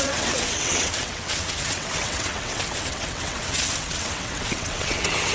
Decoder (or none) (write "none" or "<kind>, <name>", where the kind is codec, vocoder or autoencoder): vocoder, WaveNeXt